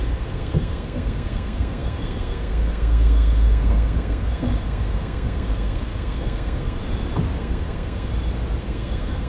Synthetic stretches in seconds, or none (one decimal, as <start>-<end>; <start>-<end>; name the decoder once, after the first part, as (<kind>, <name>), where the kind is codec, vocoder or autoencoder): 0.0-6.8 (codec, SNAC); 7.4-8.1; 8.6-9.3